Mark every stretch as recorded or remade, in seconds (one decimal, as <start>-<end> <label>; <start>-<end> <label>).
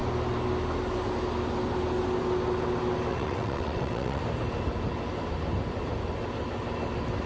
0.0-3.1 recorded; 3.1-4.2 remade; 4.2-7.3 recorded